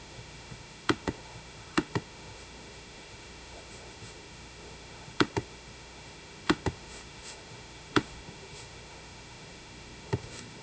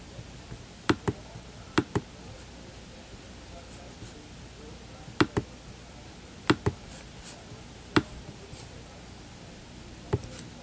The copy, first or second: first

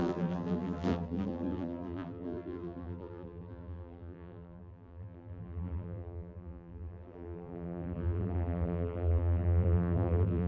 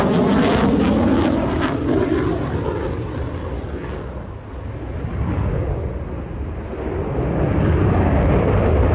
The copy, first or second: first